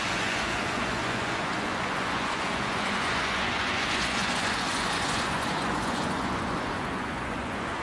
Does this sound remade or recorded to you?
remade